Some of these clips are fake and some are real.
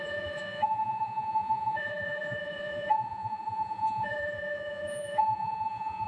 fake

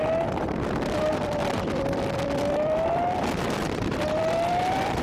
fake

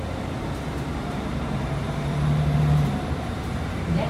fake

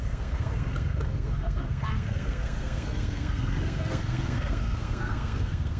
fake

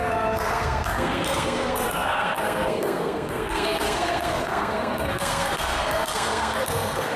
fake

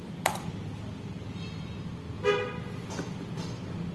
real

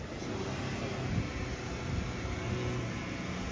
real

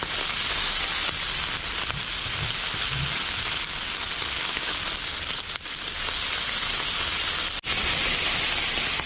real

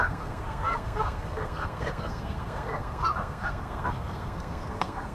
fake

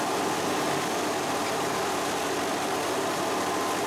real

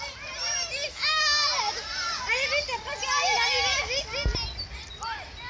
real